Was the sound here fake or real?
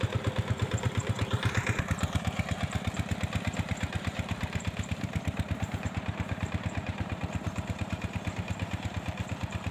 fake